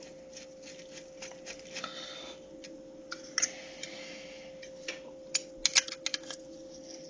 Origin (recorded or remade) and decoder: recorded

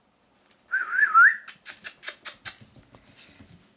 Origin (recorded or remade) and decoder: recorded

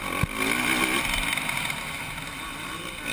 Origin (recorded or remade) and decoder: recorded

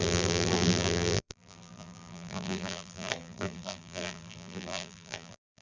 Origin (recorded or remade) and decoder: remade, vocoder, BigVGAN v2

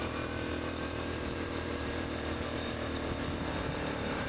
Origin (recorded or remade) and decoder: remade, vocoder, BigVGAN v2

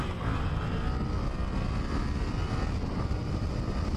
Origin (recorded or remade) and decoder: recorded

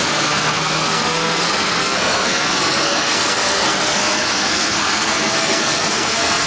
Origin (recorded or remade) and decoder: remade, codec, SNAC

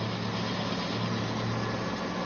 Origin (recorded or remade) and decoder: recorded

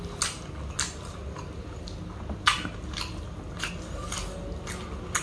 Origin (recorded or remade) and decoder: recorded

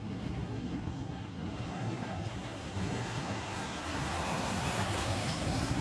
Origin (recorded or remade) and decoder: remade, codec, SNAC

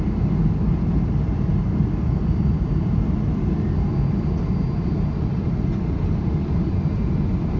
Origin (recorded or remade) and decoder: recorded